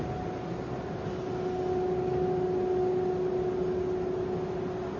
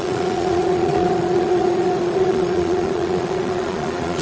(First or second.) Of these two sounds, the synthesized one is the second